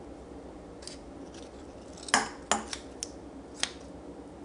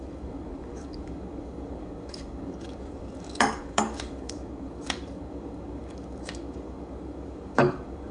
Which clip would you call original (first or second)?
first